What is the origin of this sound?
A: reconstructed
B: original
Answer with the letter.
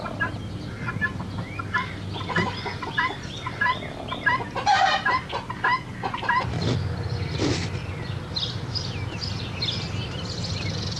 B